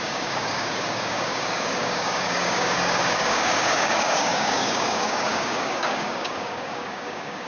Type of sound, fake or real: fake